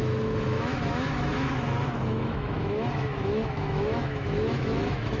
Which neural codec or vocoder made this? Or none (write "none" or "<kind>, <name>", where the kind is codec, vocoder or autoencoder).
autoencoder, DAC-VAE